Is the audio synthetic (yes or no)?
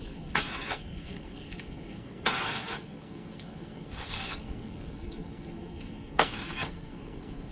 yes